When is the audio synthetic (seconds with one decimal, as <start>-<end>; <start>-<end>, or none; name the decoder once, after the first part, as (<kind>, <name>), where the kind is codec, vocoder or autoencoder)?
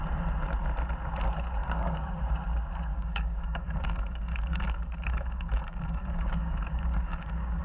1.6-2.2 (codec, DAC); 2.9-7.6